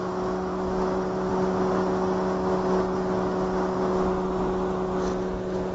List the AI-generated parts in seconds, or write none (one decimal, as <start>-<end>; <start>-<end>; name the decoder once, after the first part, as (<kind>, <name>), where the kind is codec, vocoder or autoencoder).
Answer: 0.5-1.3 (vocoder, BigVGAN v2); 3.9-4.4